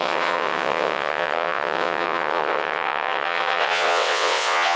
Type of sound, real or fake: fake